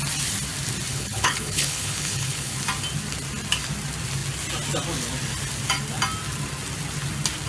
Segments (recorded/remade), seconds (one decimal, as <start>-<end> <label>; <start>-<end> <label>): 0.0-0.9 recorded; 0.9-2.6 remade; 2.6-7.5 recorded